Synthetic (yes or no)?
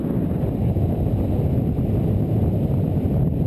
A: yes